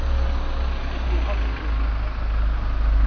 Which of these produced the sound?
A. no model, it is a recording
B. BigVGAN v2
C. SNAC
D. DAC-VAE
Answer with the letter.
A